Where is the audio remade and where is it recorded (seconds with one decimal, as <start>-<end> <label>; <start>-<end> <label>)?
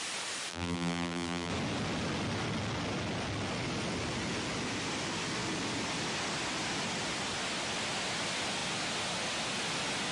0.0-0.5 recorded; 0.5-1.5 remade; 1.5-10.1 recorded